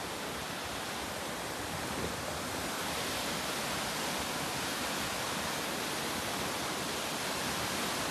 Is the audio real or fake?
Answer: real